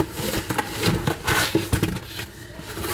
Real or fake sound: real